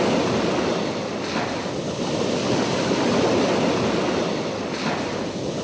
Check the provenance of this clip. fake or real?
real